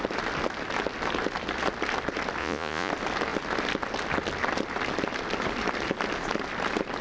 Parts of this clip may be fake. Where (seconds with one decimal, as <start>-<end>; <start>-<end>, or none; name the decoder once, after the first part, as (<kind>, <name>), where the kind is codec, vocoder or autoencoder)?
2.4-2.9 (vocoder, Vocos)